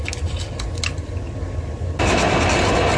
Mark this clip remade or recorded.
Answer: recorded